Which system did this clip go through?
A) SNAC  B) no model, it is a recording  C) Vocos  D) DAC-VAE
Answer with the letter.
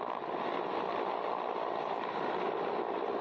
B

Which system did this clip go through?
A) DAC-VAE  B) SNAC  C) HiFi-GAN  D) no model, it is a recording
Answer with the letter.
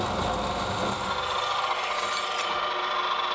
D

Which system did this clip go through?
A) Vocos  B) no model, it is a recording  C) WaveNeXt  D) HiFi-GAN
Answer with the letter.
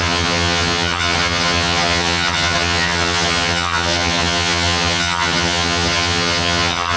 D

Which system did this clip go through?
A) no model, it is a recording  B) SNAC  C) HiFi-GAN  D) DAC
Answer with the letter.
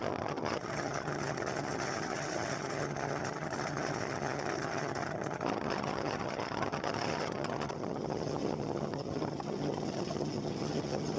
C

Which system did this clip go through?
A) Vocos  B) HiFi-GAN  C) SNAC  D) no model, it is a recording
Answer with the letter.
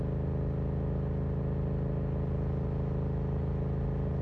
D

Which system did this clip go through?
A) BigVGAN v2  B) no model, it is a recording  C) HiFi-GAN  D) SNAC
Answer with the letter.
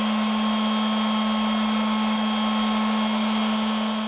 B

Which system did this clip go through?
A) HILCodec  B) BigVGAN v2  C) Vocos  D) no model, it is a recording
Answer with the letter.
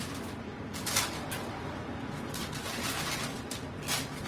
D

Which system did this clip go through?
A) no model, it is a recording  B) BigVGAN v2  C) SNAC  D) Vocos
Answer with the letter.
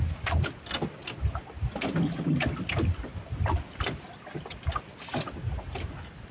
A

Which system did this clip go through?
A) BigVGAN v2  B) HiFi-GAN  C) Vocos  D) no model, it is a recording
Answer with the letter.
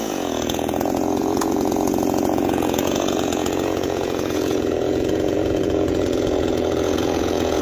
C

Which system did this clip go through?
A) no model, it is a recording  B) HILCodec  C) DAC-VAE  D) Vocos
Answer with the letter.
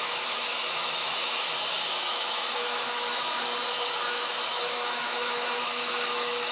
C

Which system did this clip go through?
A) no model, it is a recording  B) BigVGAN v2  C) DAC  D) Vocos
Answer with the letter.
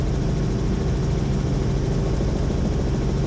A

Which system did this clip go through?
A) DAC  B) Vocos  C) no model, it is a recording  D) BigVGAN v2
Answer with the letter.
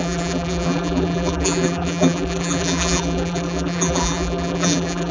D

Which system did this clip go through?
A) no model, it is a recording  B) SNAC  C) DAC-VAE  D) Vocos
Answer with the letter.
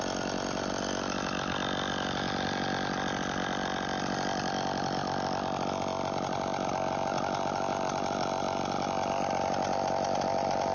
A